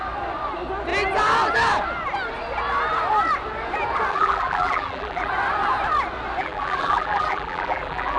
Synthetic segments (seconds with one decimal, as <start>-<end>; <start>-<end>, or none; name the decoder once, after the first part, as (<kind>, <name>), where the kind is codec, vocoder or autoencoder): 4.1-5.3 (vocoder, BigVGAN v2); 6.4-8.2